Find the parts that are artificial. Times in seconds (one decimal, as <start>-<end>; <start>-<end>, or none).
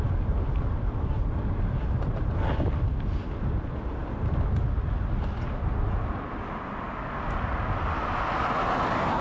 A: none